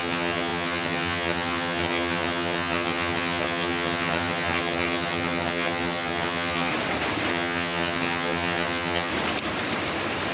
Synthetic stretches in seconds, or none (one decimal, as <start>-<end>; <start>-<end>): 0.0-6.7; 7.3-9.1

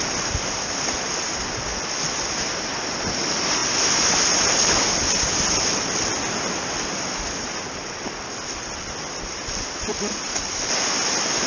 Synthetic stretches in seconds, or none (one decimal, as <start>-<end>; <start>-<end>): none

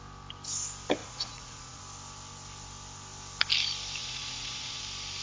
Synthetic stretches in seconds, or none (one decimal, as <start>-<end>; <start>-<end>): 1.0-1.8; 4.0-4.8

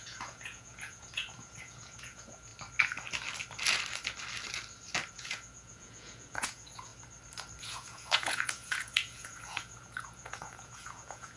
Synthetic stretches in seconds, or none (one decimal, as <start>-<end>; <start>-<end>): 0.0-2.5; 5.1-6.9; 7.6-11.4